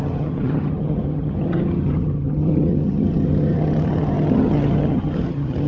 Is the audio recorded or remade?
remade